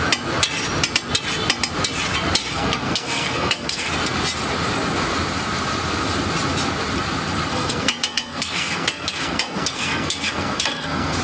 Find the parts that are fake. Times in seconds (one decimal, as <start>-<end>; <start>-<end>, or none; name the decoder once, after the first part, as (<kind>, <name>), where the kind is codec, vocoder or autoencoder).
2.4-3.9 (codec, SNAC); 7.5-11.2